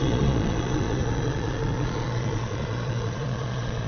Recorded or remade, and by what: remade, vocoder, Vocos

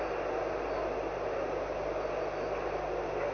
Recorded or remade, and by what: recorded